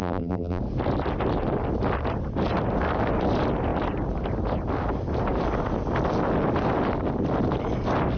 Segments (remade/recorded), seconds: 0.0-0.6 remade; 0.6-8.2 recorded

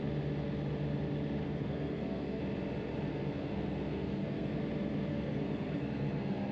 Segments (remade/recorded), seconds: 0.0-1.4 recorded; 1.4-2.4 remade; 2.4-3.1 recorded; 3.1-4.6 remade; 4.6-5.1 recorded; 5.1-6.5 remade

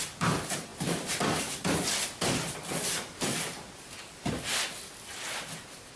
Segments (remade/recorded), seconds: 0.0-6.0 recorded

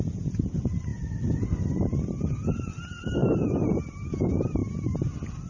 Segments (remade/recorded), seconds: 0.0-0.9 remade; 0.9-1.6 recorded; 1.6-4.6 remade; 4.6-5.5 recorded